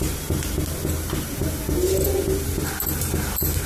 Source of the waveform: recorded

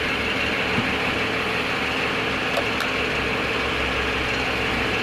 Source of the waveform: recorded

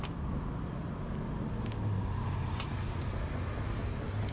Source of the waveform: recorded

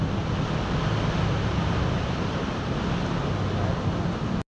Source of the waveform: recorded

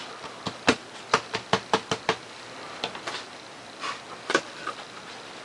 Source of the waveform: recorded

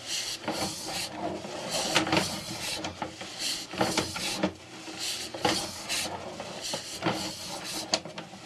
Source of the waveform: recorded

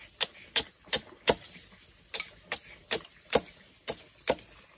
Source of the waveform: recorded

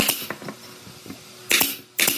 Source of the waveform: recorded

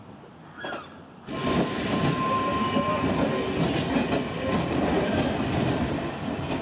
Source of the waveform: recorded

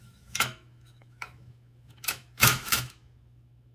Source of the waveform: remade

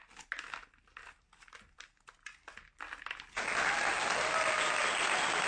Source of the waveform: recorded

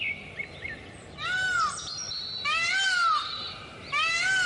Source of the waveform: recorded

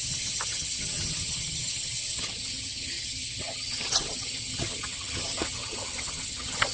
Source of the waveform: remade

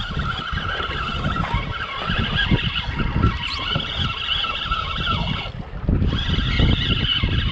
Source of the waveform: recorded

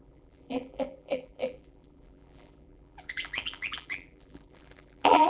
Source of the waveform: remade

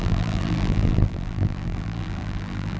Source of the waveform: remade